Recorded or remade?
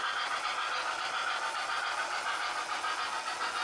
recorded